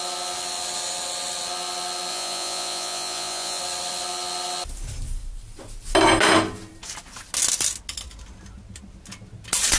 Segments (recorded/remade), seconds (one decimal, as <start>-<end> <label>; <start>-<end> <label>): 0.0-2.1 recorded; 2.1-3.6 remade; 3.6-9.8 recorded

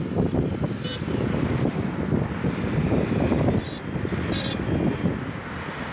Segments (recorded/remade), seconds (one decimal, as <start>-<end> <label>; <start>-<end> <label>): 0.0-5.9 recorded

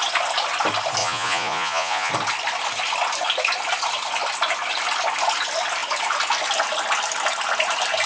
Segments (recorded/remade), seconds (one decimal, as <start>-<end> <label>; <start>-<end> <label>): 0.0-1.0 recorded; 1.0-2.1 remade; 2.1-8.1 recorded

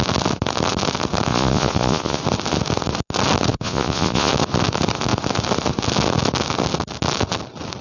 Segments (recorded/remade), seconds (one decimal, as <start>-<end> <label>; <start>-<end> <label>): 0.0-1.3 recorded; 1.3-2.2 remade; 2.2-3.5 recorded; 3.5-4.3 remade; 4.3-7.8 recorded

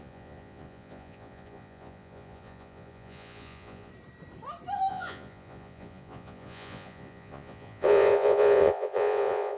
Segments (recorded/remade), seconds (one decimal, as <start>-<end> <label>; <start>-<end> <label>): 0.0-3.9 remade; 3.9-4.9 recorded; 4.9-9.6 remade

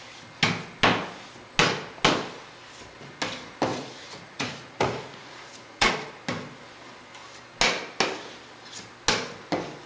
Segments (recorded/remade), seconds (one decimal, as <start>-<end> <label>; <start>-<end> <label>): 0.0-3.7 recorded; 3.7-5.9 remade; 5.9-9.9 recorded

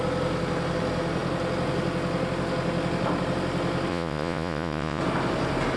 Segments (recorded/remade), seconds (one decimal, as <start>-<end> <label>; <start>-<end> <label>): 0.0-3.9 recorded; 3.9-5.0 remade; 5.0-5.8 recorded